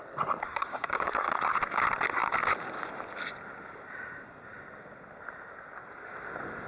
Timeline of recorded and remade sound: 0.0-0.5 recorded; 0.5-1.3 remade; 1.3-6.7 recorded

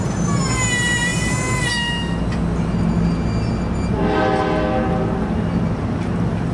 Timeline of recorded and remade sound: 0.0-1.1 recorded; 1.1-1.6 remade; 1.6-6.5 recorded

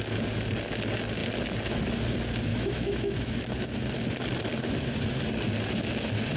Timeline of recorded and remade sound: 0.0-2.5 recorded; 2.5-3.4 remade; 3.4-6.4 recorded

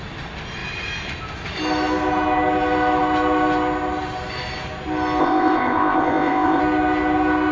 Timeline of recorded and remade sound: 0.0-5.2 recorded; 5.2-6.6 remade; 6.6-7.5 recorded

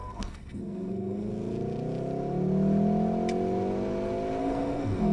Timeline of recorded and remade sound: 0.0-1.3 remade; 1.3-4.4 recorded; 4.4-5.1 remade

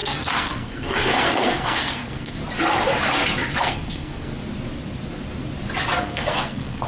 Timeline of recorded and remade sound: 0.0-2.4 remade; 2.4-3.6 recorded; 3.6-4.3 remade; 4.3-6.0 recorded; 6.0-6.9 remade

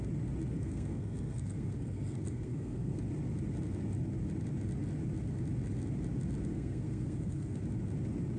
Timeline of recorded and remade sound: 0.0-0.5 recorded; 0.5-3.0 remade; 3.0-6.5 recorded; 6.5-7.6 remade; 7.6-8.4 recorded